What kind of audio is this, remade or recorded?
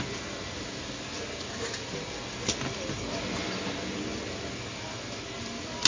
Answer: recorded